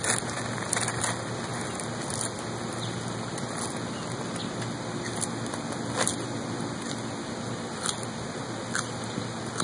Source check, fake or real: real